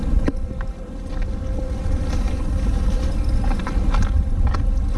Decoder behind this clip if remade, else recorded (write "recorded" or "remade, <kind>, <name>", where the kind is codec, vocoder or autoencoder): recorded